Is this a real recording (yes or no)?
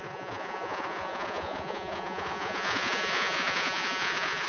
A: no